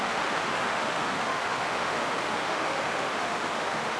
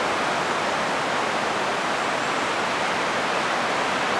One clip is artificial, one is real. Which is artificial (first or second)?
first